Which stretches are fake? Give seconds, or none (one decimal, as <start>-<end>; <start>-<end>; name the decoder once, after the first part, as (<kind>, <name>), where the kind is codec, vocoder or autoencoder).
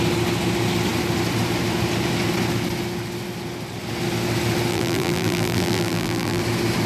4.7-6.4 (vocoder, BigVGAN v2)